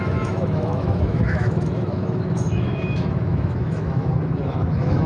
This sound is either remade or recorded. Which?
remade